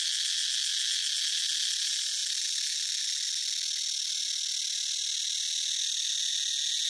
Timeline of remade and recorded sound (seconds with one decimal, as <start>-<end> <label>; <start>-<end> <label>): 0.0-6.9 recorded